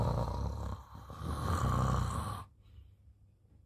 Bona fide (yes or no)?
yes